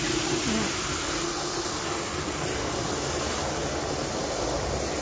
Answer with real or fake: real